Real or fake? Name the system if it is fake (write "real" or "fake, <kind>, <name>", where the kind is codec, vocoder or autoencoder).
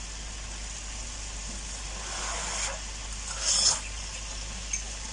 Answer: real